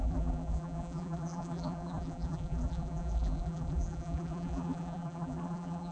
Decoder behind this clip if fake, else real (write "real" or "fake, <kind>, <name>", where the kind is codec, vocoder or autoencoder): fake, vocoder, BigVGAN v2